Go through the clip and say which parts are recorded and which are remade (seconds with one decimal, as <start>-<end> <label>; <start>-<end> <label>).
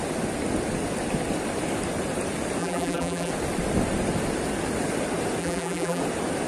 0.0-2.6 recorded; 2.6-3.3 remade; 3.3-5.4 recorded; 5.4-6.0 remade; 6.0-6.5 recorded